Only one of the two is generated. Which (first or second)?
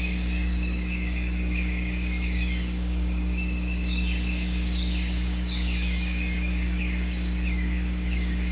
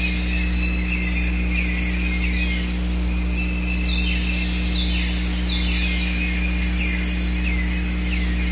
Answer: first